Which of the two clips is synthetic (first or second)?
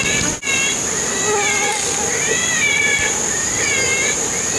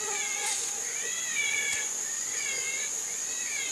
second